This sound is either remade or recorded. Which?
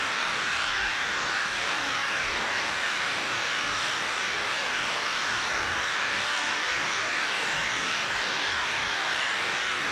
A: remade